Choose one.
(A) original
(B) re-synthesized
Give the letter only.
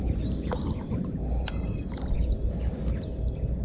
A